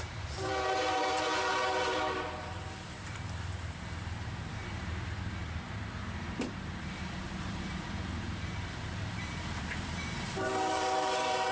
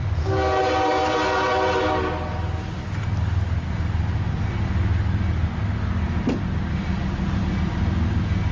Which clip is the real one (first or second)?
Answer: second